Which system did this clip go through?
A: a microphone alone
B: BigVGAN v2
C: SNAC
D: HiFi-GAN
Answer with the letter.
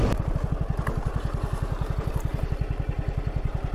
A